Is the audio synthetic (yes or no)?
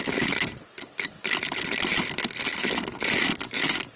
no